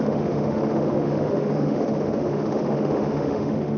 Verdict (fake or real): fake